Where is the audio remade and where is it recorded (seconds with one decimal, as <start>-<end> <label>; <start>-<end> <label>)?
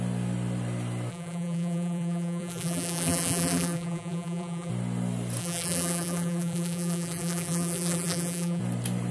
0.0-1.1 recorded; 1.1-4.7 remade; 4.7-5.4 recorded; 5.4-8.6 remade; 8.6-9.1 recorded